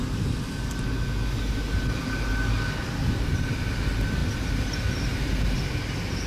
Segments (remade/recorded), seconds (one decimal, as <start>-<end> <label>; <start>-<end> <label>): 0.0-6.3 recorded